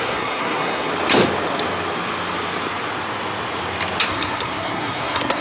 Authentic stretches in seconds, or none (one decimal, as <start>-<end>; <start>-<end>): 0.9-4.1